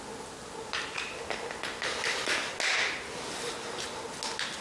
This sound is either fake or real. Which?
real